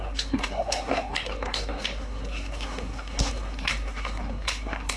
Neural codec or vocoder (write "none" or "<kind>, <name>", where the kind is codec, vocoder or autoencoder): codec, SNAC